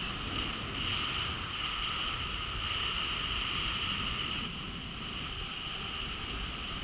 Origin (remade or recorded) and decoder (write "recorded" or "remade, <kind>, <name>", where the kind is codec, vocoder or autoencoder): recorded